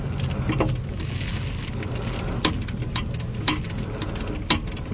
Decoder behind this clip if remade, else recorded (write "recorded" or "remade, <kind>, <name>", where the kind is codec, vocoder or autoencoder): recorded